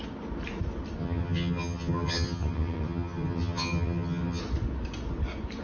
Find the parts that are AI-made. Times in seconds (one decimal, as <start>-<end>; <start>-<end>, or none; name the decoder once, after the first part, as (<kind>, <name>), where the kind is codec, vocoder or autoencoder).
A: 1.0-4.4 (vocoder, HiFi-GAN)